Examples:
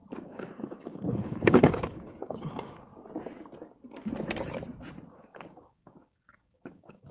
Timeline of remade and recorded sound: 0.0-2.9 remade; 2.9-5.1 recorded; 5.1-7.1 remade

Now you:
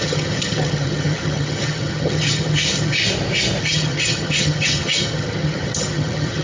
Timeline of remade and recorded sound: 0.0-3.0 remade; 3.0-3.6 recorded; 3.6-6.4 remade

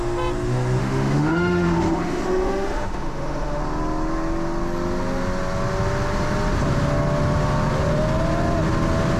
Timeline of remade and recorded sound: 0.0-0.8 recorded; 0.8-3.6 remade; 3.6-9.2 recorded

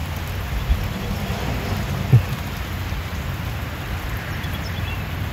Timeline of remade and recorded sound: 0.0-5.3 recorded